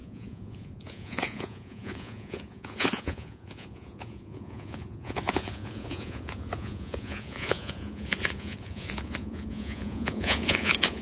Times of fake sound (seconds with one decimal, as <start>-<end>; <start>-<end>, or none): 0.0-11.0